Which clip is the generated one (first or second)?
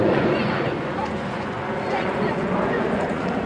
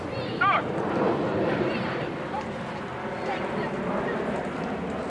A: first